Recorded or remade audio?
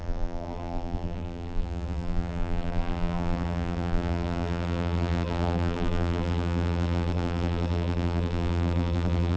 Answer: remade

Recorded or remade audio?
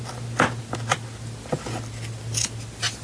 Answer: recorded